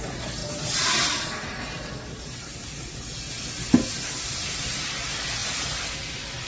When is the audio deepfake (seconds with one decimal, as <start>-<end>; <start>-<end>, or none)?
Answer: 0.0-2.5; 4.1-6.5